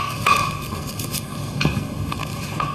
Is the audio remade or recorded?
remade